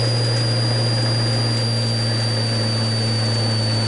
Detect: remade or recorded recorded